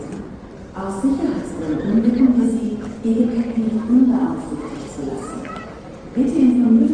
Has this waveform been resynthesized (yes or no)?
no